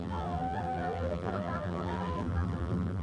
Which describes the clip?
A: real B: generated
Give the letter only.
B